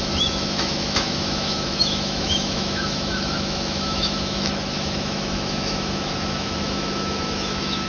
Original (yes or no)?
no